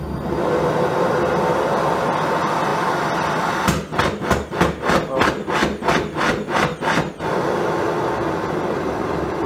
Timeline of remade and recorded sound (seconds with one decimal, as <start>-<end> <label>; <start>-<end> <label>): 0.0-9.5 recorded